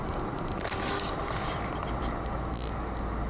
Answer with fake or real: real